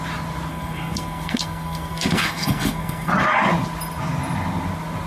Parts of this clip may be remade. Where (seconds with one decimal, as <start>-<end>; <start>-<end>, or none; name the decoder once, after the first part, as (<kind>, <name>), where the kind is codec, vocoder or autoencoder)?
0.5-3.1 (codec, SNAC)